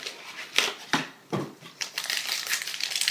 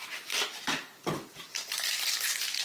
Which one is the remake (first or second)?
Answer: first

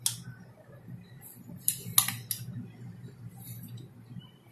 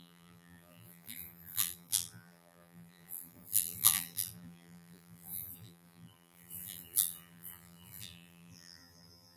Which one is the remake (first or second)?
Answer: second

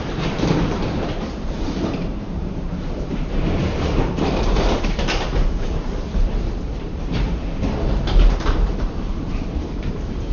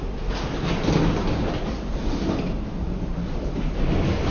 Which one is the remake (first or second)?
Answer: first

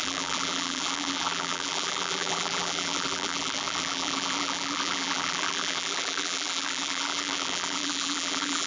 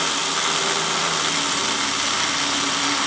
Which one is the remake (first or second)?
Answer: first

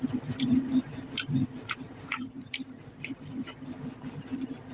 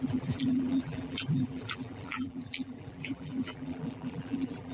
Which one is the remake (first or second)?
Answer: second